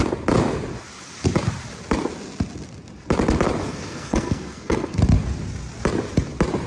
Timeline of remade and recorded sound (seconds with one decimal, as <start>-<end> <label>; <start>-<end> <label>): 0.0-3.7 recorded; 3.7-5.0 remade; 5.0-6.7 recorded